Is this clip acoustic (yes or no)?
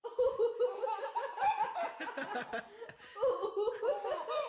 yes